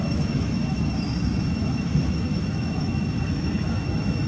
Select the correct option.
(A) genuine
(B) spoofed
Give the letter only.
B